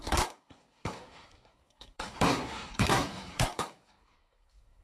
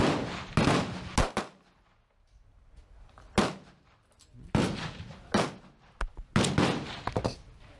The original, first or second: second